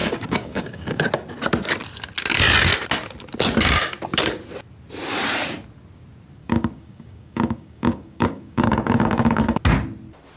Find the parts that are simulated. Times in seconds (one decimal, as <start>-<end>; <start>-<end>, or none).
0.0-1.0; 6.4-9.6